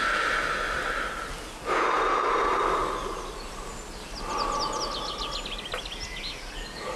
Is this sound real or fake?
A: real